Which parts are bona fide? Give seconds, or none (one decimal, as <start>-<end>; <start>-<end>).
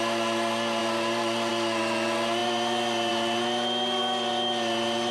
0.0-5.1